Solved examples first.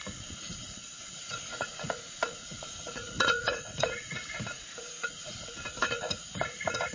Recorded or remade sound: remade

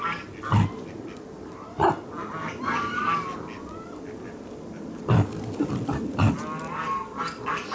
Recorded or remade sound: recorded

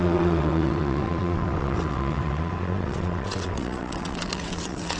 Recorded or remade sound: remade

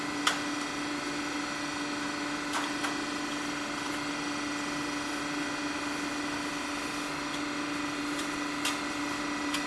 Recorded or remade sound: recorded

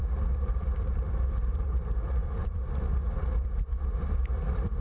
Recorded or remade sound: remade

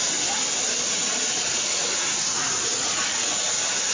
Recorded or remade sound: recorded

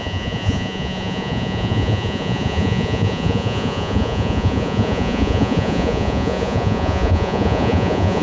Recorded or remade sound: remade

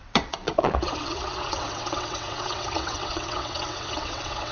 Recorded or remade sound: remade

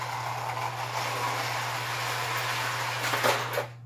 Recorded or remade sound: recorded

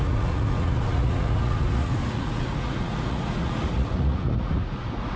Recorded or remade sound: remade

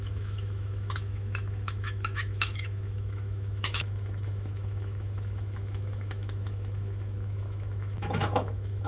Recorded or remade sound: remade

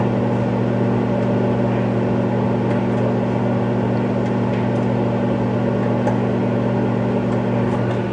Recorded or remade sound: recorded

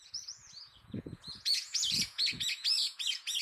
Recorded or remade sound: remade